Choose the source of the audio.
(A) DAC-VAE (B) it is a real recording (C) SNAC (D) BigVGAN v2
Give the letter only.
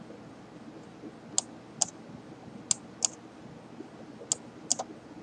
B